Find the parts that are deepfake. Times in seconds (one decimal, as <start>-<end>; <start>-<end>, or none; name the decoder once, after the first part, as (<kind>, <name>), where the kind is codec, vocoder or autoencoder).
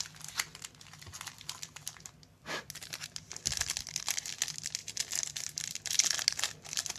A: none